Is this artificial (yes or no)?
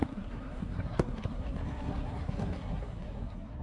yes